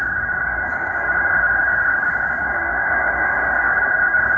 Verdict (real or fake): fake